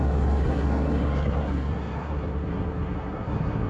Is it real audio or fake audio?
fake